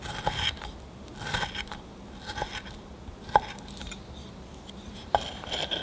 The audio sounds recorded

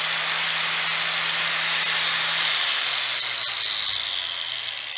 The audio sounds recorded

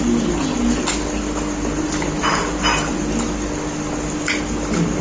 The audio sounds recorded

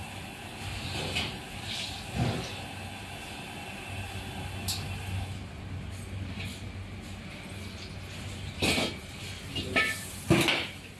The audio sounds recorded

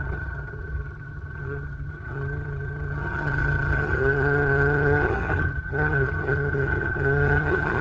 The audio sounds remade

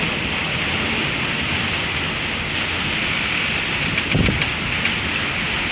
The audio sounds recorded